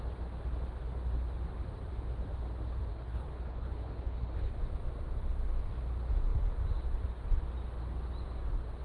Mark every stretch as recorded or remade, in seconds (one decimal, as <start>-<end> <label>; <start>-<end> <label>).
0.0-2.9 recorded; 2.9-4.5 remade; 4.5-8.8 recorded